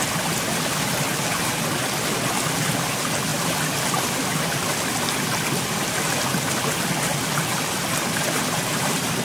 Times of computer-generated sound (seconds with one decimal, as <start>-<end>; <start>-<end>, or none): none

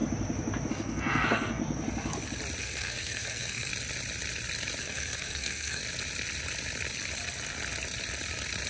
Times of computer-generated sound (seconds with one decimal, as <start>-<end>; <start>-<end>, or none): 0.7-1.6; 2.6-3.7; 4.8-5.8

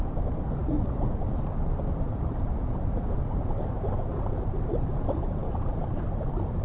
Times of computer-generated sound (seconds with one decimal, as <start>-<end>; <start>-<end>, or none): none

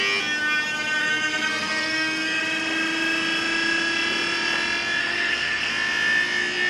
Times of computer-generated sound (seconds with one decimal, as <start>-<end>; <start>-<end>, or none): 1.0-2.4; 5.0-5.7

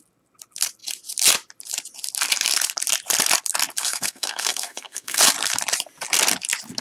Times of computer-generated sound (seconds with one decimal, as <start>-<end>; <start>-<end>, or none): 3.8-5.2